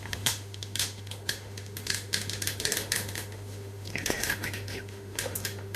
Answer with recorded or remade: remade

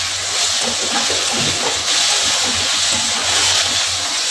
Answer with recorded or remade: remade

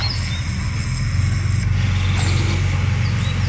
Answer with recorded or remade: recorded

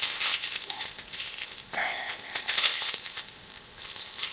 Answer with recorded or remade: remade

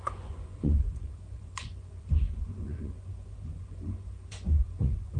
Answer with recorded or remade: remade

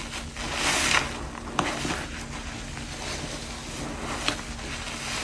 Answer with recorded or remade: recorded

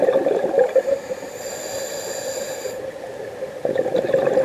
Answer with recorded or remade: recorded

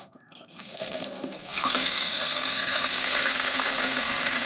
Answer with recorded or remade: remade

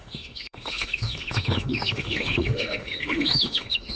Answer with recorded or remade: remade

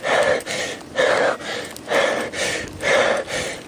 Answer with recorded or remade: recorded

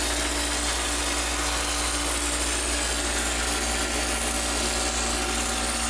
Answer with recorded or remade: recorded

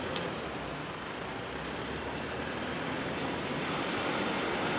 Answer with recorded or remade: recorded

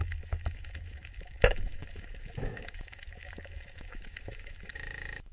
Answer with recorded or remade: remade